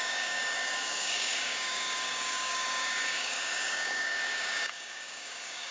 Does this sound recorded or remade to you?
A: remade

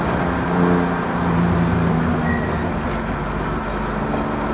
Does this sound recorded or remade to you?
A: recorded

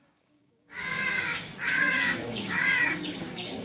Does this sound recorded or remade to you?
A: remade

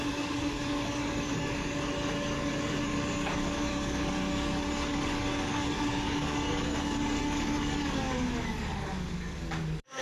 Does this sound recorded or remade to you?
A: remade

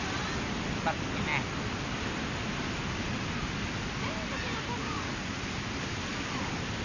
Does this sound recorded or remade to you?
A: recorded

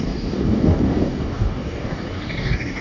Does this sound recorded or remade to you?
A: remade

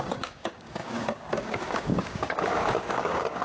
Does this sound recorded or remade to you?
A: remade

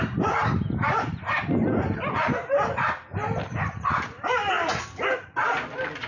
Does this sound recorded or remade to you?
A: recorded